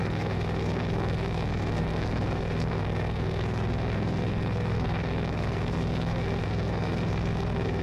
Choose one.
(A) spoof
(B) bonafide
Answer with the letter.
A